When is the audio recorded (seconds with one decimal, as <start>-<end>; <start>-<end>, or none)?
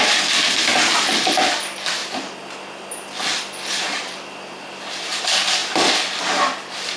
0.7-1.6; 2.0-3.8; 5.6-6.2